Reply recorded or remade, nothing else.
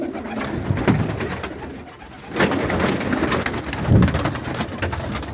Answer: recorded